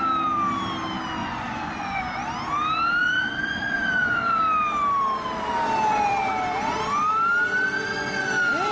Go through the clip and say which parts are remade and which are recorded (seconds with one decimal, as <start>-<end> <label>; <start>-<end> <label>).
0.0-1.2 recorded; 1.2-2.0 remade; 2.0-3.0 recorded; 3.0-4.4 remade; 4.4-8.7 recorded